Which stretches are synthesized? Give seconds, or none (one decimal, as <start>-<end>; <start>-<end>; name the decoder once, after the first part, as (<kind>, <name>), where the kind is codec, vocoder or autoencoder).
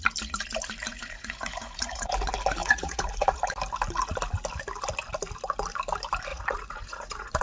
0.9-2.1 (vocoder, Vocos); 2.6-3.4; 6.3-7.4